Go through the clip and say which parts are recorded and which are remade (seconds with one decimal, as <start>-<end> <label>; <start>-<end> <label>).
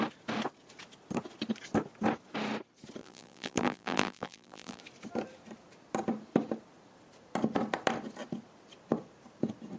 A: 0.0-3.0 recorded; 3.0-4.8 remade; 4.8-9.8 recorded